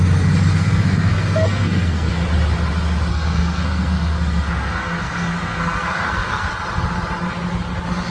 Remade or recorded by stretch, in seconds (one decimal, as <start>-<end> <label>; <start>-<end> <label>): 0.0-0.5 recorded; 0.5-2.1 remade; 2.1-3.1 recorded; 3.1-6.5 remade; 6.5-8.1 recorded

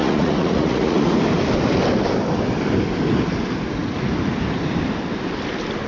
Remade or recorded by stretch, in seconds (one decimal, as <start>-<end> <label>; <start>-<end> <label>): 0.0-1.1 remade; 1.1-5.9 recorded